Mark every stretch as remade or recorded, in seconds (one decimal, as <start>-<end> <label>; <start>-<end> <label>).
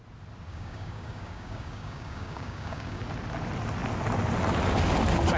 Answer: 0.0-0.5 recorded; 0.5-3.0 remade; 3.0-5.4 recorded